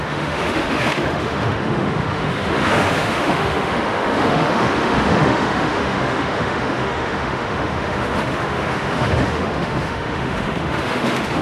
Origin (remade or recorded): remade